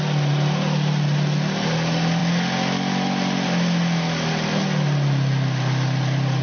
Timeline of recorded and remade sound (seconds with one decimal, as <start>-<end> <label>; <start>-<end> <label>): 0.0-6.4 recorded